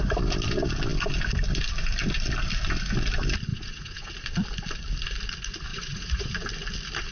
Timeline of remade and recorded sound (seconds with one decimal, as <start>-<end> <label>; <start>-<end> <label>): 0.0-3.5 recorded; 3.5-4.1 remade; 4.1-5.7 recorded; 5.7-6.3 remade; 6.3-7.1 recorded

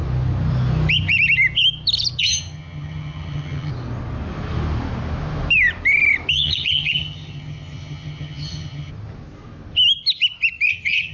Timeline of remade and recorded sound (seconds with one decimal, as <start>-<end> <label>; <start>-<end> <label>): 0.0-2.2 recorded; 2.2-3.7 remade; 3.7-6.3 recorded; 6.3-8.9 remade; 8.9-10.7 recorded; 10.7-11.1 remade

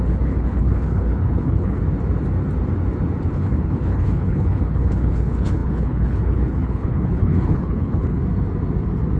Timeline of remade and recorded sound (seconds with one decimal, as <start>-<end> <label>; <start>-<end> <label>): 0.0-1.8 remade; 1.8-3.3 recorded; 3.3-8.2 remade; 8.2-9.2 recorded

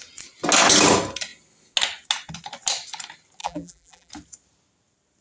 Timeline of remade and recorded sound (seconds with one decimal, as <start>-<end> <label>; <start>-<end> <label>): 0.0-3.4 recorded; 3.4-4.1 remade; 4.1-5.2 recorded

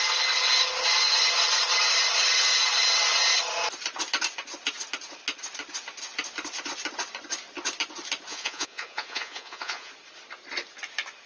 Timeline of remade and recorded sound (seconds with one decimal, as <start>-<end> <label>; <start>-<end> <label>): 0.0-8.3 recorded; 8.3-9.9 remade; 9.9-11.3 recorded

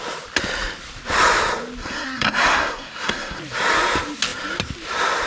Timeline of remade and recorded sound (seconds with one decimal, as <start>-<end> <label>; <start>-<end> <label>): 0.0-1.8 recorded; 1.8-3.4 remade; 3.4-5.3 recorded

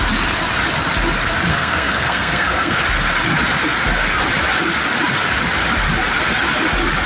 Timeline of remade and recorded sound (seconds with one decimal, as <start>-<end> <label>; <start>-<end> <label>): 0.0-1.5 recorded; 1.5-2.8 remade; 2.8-7.1 recorded

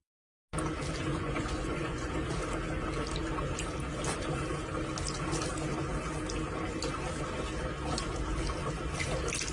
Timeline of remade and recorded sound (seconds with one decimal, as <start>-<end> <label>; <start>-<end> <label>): 0.0-1.1 recorded; 1.1-2.1 remade; 2.1-9.5 recorded